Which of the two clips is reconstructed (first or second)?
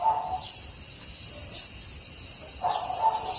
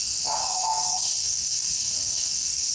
second